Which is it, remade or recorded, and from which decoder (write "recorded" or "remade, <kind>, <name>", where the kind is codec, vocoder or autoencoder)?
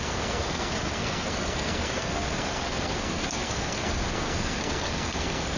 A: remade, codec, SNAC